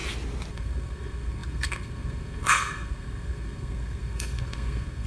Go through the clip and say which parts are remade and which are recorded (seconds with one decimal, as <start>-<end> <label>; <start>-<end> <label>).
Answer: 0.0-0.5 recorded; 0.5-5.1 remade